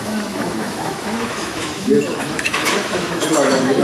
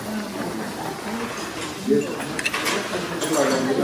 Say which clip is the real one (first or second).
second